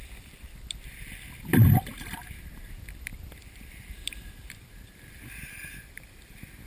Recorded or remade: remade